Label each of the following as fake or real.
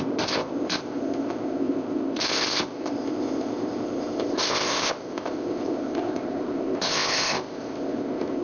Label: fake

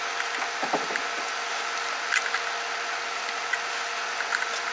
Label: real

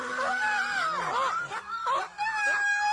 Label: real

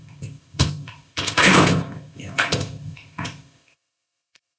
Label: fake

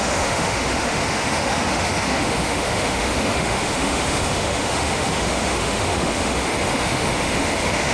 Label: fake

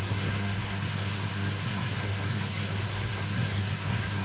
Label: fake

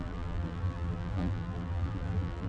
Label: fake